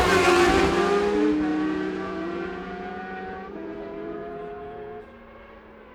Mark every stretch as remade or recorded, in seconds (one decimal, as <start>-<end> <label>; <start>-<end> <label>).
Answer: 0.0-1.5 recorded; 1.5-5.0 remade; 5.0-5.9 recorded